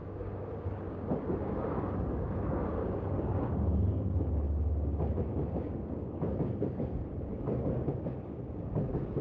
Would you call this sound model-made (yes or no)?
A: yes